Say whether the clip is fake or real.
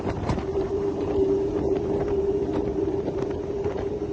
fake